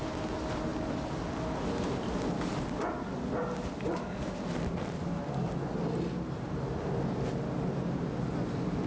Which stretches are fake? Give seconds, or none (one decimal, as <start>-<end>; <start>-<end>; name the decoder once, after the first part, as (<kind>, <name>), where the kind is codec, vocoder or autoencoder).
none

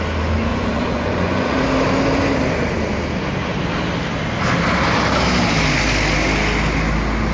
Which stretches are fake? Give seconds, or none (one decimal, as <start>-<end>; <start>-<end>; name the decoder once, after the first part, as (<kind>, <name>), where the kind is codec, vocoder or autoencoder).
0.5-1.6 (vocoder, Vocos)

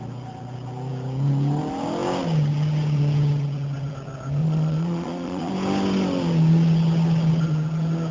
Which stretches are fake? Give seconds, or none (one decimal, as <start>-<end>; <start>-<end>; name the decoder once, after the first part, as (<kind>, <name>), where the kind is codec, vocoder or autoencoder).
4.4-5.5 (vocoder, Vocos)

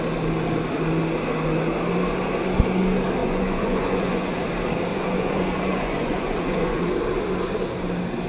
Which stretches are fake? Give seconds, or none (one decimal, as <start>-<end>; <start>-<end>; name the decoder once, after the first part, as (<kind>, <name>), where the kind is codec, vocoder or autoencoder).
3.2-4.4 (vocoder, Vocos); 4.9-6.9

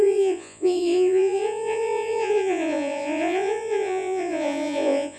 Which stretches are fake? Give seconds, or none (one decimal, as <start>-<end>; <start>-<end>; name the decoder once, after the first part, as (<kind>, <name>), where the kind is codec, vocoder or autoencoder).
0.0-5.2 (vocoder, Vocos)